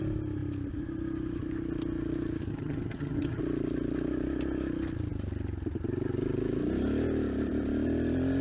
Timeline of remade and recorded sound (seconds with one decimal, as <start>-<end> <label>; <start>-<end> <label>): 0.0-2.5 recorded; 2.5-3.4 remade; 3.4-8.4 recorded